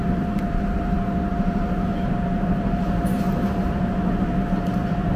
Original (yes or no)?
no